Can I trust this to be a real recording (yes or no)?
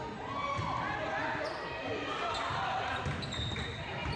yes